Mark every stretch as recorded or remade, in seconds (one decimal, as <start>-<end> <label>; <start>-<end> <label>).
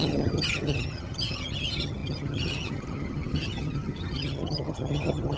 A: 0.0-5.4 remade